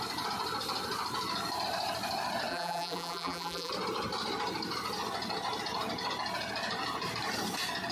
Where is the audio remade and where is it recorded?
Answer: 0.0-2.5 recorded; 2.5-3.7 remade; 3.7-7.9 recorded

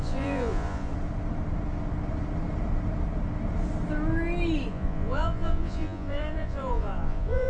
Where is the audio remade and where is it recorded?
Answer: 0.0-0.9 remade; 0.9-4.7 recorded; 4.7-7.5 remade

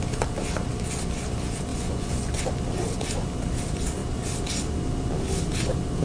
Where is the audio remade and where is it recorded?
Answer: 0.0-1.7 recorded; 1.7-2.4 remade; 2.4-6.0 recorded

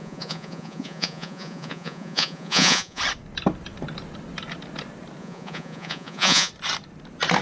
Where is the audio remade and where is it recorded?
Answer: 0.0-3.0 remade; 3.0-5.2 recorded; 5.2-6.5 remade; 6.5-7.4 recorded

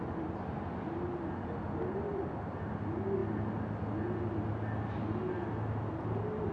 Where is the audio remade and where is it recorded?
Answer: 0.0-6.5 recorded

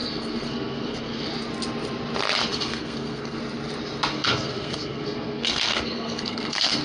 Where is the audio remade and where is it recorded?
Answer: 0.0-1.3 remade; 1.3-2.5 recorded; 2.5-3.4 remade; 3.4-4.1 recorded; 4.1-6.8 remade